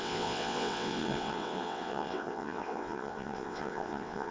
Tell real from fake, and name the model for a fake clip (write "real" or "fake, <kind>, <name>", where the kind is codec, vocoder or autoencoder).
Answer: fake, vocoder, WaveNeXt